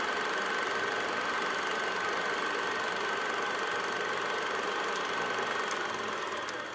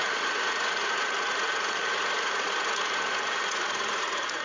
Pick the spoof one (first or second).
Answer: second